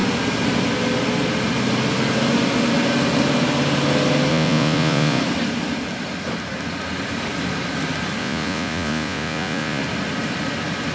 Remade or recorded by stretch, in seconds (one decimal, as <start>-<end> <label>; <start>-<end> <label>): 0.0-4.3 recorded; 4.3-5.2 remade; 5.2-8.2 recorded; 8.2-9.8 remade; 9.8-10.9 recorded